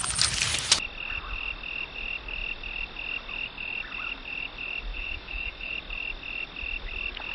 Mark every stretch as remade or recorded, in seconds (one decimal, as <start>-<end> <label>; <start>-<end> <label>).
0.0-4.9 recorded; 4.9-5.7 remade; 5.7-7.3 recorded